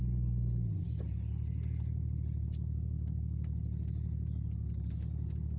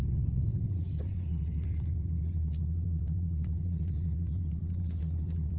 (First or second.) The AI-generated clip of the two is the second